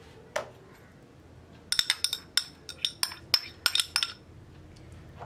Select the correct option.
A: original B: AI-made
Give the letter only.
A